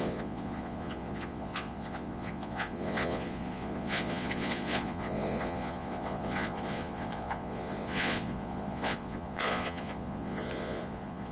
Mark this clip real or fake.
fake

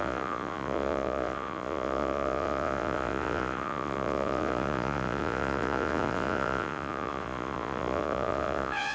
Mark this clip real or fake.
fake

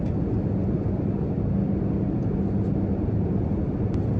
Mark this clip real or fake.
real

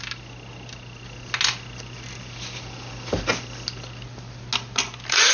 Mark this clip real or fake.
real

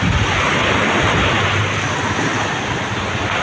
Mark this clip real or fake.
real